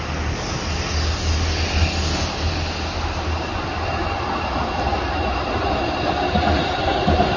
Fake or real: real